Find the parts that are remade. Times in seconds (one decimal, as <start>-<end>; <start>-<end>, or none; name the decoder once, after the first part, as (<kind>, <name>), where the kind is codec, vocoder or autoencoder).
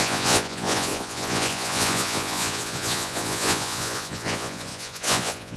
0.0-5.6 (vocoder, Vocos)